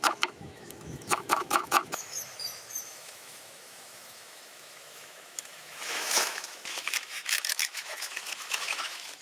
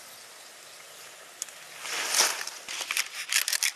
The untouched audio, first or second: second